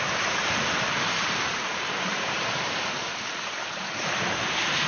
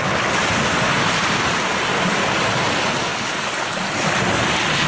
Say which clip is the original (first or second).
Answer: second